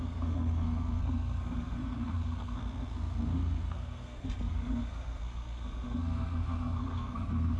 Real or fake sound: fake